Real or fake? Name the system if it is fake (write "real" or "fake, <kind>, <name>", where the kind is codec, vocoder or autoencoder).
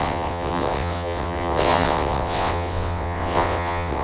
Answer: fake, vocoder, WaveNeXt